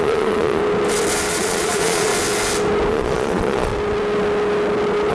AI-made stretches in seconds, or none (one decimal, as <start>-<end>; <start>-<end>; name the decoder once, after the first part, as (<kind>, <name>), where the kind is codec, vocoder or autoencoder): 0.0-0.6 (vocoder, Vocos); 1.3-2.1; 2.9-3.7